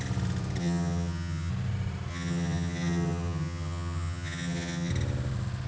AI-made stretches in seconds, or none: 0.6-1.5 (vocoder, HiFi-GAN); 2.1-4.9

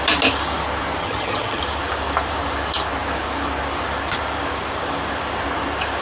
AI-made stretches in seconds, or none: 1.0-1.6 (vocoder, HiFi-GAN)

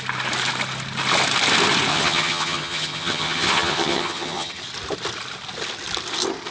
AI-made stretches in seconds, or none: 1.9-4.6 (vocoder, HiFi-GAN)

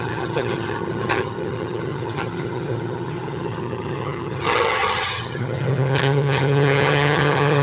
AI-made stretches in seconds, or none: 0.0-7.6 (vocoder, HiFi-GAN)

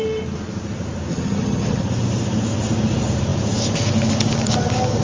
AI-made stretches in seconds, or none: 1.1-1.8 (vocoder, HiFi-GAN)

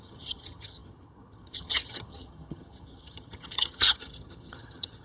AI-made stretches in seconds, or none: 0.0-5.0 (vocoder, HiFi-GAN)